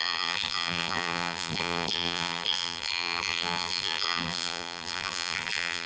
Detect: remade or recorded remade